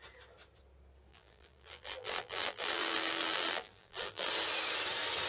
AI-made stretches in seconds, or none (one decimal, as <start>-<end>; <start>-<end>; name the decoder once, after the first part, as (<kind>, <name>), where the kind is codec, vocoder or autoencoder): 1.1-4.3 (vocoder, BigVGAN v2)